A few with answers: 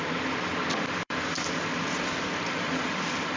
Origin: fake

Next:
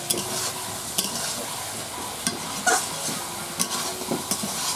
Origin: real